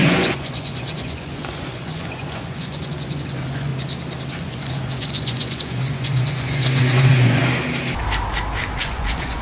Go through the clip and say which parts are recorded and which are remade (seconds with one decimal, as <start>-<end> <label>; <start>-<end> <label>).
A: 0.0-3.7 remade; 3.7-4.3 recorded; 4.3-7.4 remade; 7.4-8.8 recorded; 8.8-9.4 remade